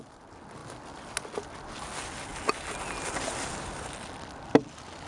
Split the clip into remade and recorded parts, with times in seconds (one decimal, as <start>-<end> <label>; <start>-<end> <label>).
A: 0.0-5.1 recorded